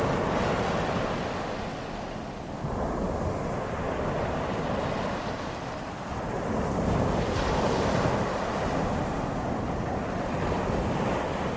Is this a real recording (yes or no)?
yes